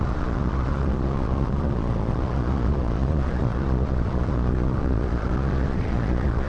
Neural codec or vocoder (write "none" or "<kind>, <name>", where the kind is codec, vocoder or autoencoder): vocoder, Vocos